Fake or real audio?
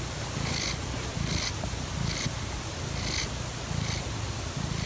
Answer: real